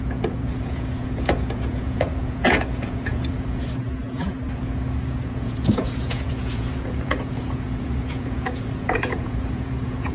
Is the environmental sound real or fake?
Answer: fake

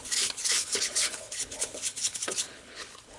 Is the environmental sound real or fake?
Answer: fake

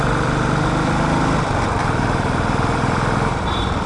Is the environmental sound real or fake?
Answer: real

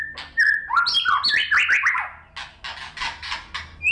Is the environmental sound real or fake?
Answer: real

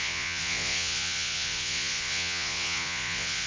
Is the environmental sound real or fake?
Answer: fake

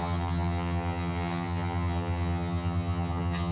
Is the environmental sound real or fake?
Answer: fake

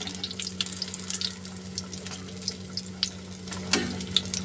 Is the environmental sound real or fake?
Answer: real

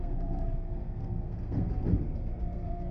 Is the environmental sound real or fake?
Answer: fake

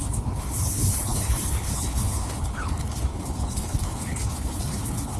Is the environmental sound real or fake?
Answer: fake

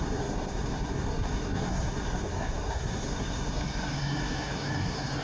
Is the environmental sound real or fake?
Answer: fake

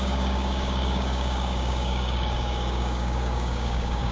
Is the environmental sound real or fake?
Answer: fake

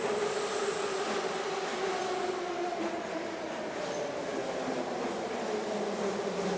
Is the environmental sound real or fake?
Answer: fake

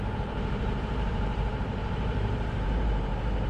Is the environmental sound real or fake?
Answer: fake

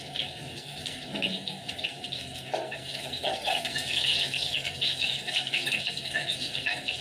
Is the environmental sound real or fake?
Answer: fake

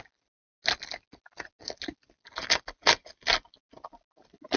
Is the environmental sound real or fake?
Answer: real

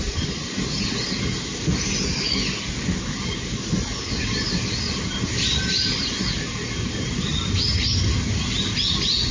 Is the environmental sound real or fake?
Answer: real